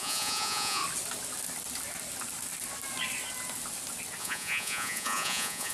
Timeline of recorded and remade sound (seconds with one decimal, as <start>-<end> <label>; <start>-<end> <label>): 0.0-0.8 remade; 0.8-4.2 recorded; 4.2-5.7 remade

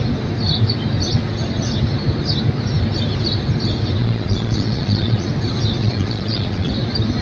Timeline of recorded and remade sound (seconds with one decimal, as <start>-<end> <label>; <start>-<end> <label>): 0.0-4.0 recorded; 4.0-5.3 remade; 5.3-5.8 recorded; 5.8-6.7 remade; 6.7-7.2 recorded